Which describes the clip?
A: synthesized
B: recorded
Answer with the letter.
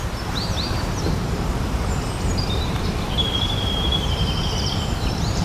A